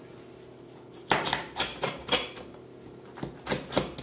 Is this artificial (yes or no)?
no